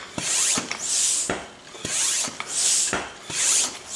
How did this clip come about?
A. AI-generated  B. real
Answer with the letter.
B